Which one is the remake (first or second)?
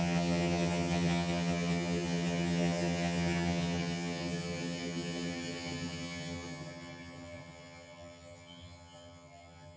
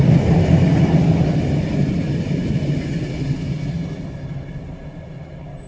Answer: first